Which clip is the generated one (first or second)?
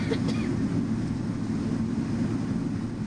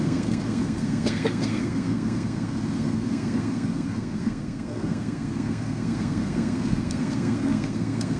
second